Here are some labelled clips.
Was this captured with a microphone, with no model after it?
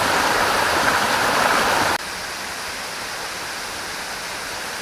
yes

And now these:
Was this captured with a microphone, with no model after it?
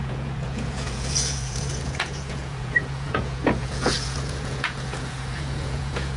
no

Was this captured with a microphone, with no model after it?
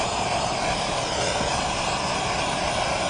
yes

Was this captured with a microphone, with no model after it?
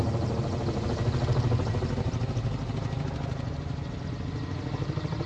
yes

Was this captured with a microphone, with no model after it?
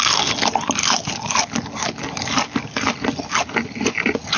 yes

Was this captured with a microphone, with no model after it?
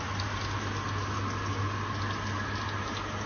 yes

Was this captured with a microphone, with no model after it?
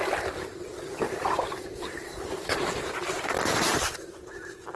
no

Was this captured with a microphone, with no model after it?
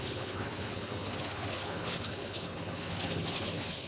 no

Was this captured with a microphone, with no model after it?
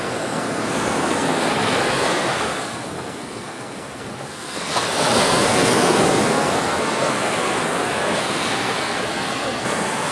no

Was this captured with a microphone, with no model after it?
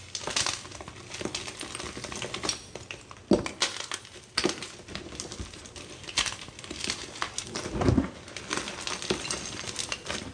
yes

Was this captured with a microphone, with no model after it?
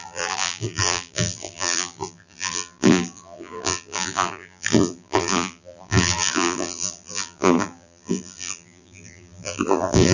no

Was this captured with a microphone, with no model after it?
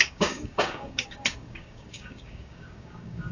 no